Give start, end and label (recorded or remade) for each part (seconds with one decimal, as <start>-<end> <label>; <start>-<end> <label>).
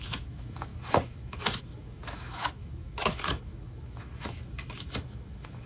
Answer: 0.0-5.7 remade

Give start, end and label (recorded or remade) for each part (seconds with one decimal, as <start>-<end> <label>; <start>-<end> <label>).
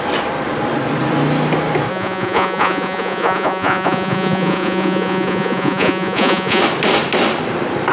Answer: 0.0-1.9 recorded; 1.9-6.6 remade; 6.6-7.9 recorded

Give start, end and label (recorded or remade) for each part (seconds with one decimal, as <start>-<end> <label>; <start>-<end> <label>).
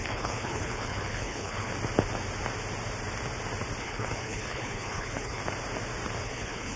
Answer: 0.0-1.7 remade; 1.7-3.8 recorded; 3.8-5.4 remade; 5.4-6.2 recorded; 6.2-6.8 remade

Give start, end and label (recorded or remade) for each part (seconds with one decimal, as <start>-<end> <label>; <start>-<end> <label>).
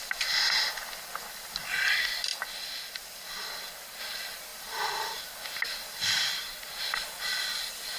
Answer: 0.0-8.0 recorded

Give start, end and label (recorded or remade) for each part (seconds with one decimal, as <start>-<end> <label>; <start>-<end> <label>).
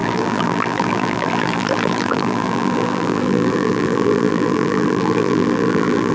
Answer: 0.0-6.1 remade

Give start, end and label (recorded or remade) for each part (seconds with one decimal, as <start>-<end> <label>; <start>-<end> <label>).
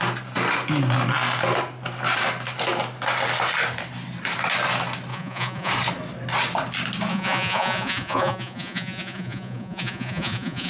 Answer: 0.0-5.1 recorded; 5.1-5.7 remade; 5.7-7.1 recorded; 7.1-10.7 remade